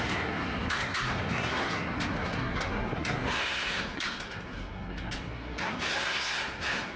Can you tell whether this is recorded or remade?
remade